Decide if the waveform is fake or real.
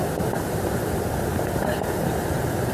fake